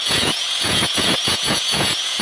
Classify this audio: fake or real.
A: fake